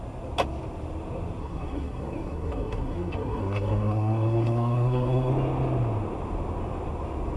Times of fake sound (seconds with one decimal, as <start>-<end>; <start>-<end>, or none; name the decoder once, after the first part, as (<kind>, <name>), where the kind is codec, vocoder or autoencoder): 1.4-5.3 (codec, SNAC)